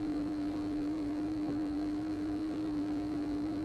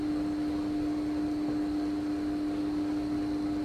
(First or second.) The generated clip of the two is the first